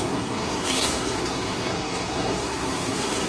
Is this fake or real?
fake